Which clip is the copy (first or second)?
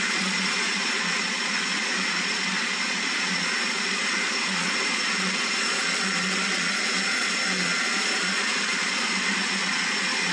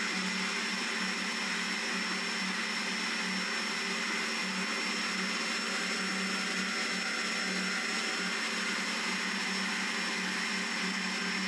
first